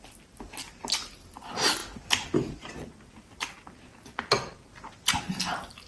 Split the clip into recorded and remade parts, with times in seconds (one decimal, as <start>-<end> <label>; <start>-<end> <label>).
0.0-5.9 recorded